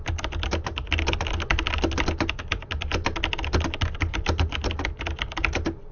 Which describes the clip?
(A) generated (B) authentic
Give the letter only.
B